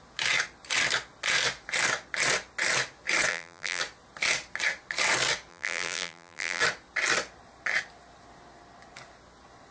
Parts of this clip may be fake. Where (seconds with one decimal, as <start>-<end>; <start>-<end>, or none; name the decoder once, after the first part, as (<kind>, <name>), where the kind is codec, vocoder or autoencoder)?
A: 3.3-3.8 (vocoder, BigVGAN v2); 5.5-6.6